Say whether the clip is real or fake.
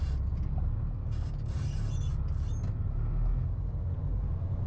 real